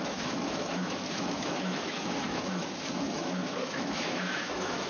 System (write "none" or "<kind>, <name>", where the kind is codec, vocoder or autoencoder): autoencoder, DAC-VAE